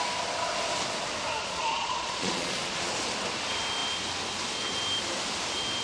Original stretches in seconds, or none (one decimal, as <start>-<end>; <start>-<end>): 0.0-1.4; 2.9-5.8

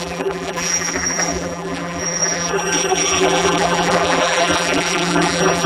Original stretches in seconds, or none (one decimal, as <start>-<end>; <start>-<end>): none

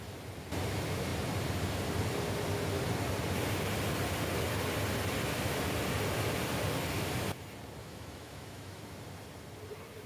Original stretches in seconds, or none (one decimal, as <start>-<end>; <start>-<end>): 0.0-7.8; 8.8-10.1

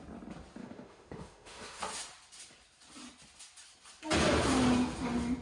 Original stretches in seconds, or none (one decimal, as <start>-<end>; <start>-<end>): 0.0-0.6; 1.8-5.4

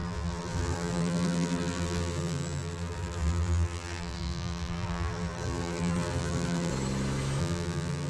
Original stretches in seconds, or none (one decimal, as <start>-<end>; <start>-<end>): 6.7-7.4

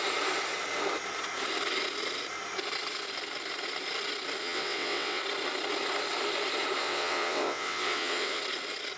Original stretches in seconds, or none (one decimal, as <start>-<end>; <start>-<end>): 0.0-4.4; 5.2-6.8; 8.4-9.0

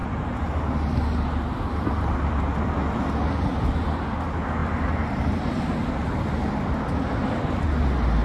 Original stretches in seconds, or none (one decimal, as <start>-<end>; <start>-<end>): 0.0-8.2